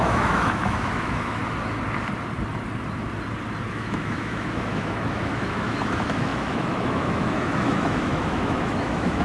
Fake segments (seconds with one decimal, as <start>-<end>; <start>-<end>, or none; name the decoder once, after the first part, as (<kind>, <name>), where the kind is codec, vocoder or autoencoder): 0.0-1.4 (autoencoder, DAC-VAE); 3.7-9.2